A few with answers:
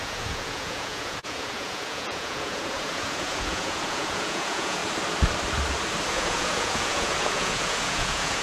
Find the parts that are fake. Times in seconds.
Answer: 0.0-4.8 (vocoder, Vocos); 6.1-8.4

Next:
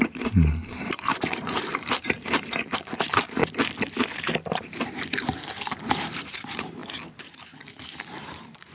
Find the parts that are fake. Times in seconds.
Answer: 0.0-3.4 (vocoder, BigVGAN v2); 4.5-6.8; 7.3-8.7

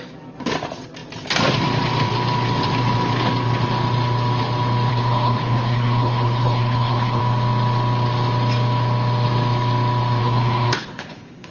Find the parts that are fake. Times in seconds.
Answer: 4.9-7.2 (codec, HILCodec); 10.2-11.5

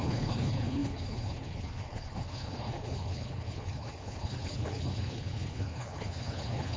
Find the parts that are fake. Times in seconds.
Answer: 0.0-6.8 (codec, HILCodec)